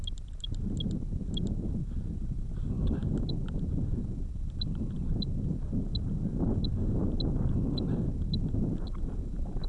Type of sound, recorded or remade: recorded